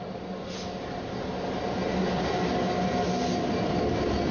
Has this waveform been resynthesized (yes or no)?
no